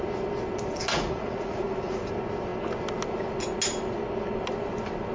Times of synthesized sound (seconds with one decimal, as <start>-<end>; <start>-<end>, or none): 0.9-2.1